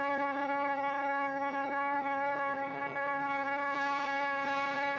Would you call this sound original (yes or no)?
no